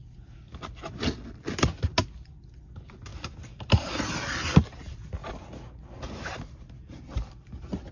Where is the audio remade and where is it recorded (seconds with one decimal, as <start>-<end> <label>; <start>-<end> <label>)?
0.0-7.9 recorded